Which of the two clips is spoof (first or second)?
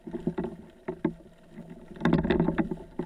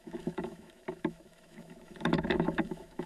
second